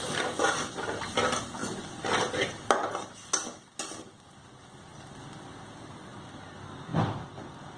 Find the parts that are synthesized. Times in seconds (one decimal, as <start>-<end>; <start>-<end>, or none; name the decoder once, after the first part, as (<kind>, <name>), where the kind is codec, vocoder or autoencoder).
none